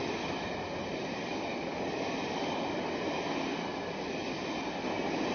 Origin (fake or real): real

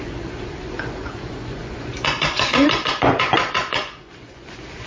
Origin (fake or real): fake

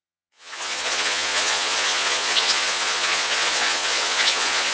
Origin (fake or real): fake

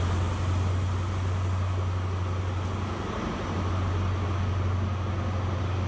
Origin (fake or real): real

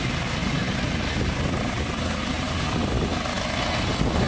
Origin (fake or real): real